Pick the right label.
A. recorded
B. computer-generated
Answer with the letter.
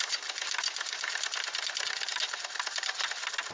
A